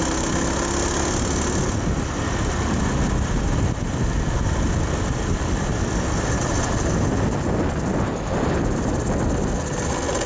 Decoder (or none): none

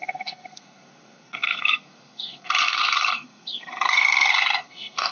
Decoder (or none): codec, SNAC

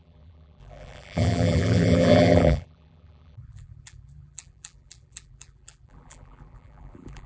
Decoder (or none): vocoder, BigVGAN v2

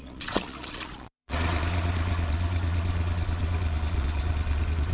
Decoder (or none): vocoder, Vocos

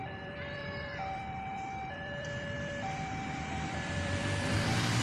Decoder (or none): vocoder, BigVGAN v2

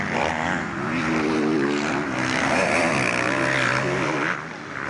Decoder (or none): none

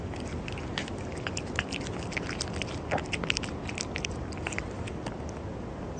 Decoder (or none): none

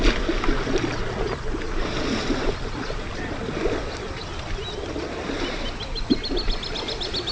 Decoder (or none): none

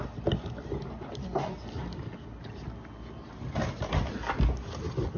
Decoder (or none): none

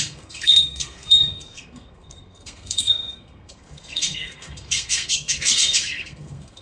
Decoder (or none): codec, SNAC